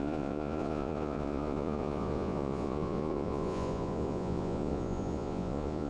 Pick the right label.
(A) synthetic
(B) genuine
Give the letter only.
A